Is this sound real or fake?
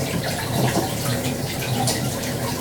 fake